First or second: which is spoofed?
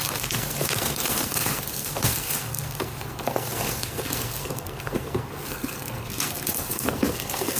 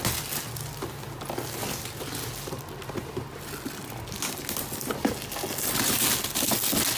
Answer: first